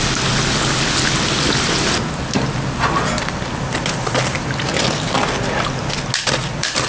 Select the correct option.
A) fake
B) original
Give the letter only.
B